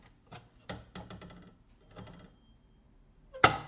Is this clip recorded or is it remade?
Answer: recorded